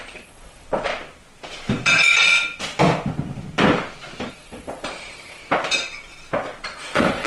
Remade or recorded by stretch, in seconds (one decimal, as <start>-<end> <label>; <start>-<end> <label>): 0.0-0.9 remade; 0.9-4.3 recorded; 4.3-5.4 remade; 5.4-6.6 recorded; 6.6-7.3 remade